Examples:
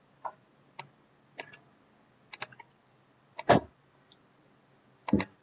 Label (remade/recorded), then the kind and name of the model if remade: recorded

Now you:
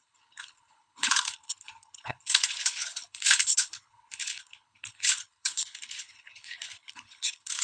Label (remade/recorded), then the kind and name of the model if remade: remade, codec, HILCodec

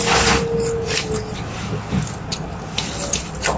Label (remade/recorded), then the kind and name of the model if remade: recorded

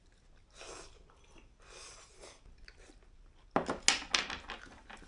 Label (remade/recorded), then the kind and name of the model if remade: recorded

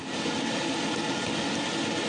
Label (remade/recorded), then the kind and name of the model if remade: recorded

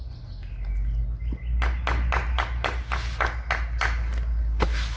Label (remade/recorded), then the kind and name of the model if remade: recorded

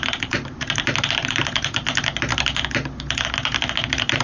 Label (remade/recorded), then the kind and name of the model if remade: recorded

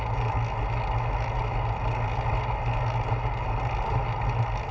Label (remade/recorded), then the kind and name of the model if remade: recorded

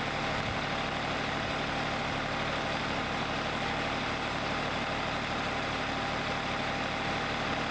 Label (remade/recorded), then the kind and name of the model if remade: recorded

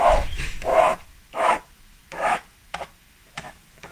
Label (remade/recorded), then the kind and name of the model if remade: remade, autoencoder, DAC-VAE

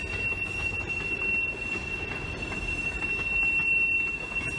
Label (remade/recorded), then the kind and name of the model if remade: recorded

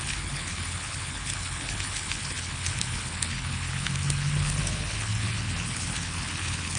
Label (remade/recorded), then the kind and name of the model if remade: remade, codec, HILCodec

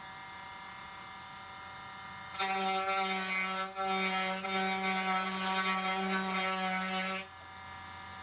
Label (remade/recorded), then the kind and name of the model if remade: recorded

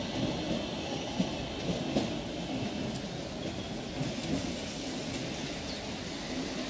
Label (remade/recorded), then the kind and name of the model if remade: recorded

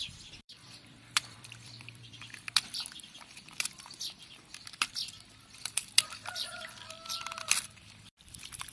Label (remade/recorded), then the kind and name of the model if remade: remade, vocoder, BigVGAN v2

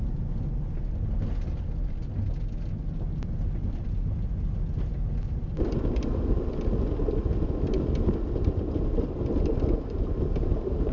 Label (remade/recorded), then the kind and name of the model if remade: recorded